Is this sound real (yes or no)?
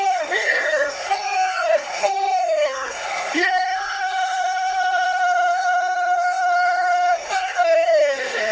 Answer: no